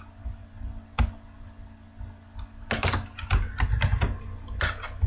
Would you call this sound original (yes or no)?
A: yes